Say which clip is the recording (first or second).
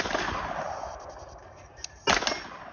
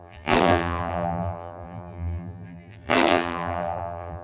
first